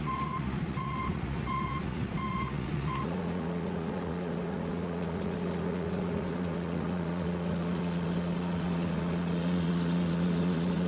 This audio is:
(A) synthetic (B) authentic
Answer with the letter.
A